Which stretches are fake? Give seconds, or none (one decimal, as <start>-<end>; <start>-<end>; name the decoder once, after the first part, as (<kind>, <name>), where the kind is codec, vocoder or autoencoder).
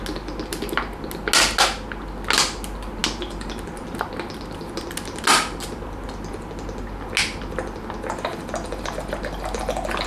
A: none